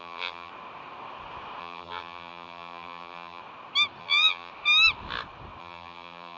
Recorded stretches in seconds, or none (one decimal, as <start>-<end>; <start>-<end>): 0.5-1.6; 3.4-4.0; 4.5-5.6